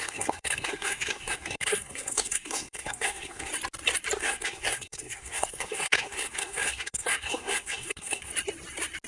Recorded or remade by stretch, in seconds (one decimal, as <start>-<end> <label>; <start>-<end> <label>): 0.0-3.5 remade; 3.5-4.2 recorded; 4.2-8.3 remade; 8.3-9.1 recorded